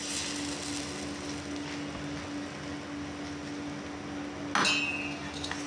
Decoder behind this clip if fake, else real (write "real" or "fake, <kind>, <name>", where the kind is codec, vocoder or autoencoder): real